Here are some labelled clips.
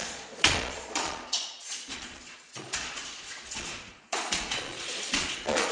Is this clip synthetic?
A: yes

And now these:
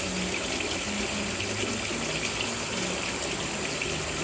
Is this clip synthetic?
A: no